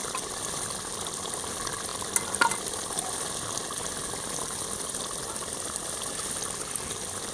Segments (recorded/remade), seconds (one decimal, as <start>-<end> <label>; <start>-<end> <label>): 0.0-7.3 recorded